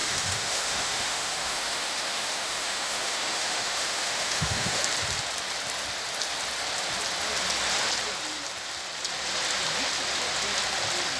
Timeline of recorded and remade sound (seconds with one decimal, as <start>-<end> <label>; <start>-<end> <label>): 0.0-4.8 remade; 4.8-11.2 recorded